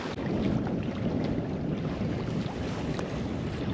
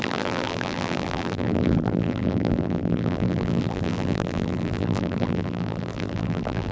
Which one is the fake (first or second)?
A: second